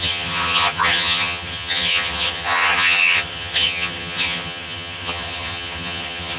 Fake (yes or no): yes